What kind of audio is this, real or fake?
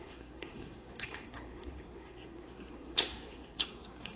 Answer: fake